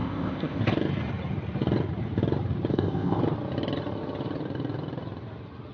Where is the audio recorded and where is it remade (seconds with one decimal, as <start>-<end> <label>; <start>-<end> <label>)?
0.0-0.6 remade; 0.6-2.7 recorded; 2.7-3.2 remade; 3.2-5.7 recorded